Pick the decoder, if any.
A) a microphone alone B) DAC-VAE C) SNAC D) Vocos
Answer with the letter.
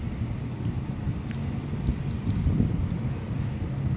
A